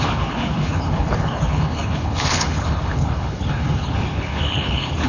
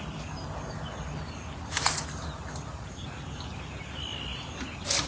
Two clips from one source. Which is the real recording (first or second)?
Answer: second